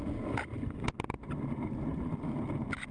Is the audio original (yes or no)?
no